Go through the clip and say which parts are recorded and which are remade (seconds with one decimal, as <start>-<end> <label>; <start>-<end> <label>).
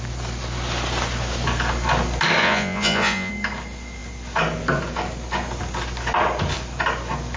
0.0-2.4 recorded; 2.4-3.3 remade; 3.3-7.4 recorded